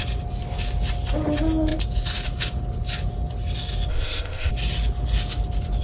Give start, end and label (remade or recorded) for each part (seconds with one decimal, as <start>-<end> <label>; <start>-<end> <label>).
0.0-3.9 recorded; 3.9-4.5 remade; 4.5-5.8 recorded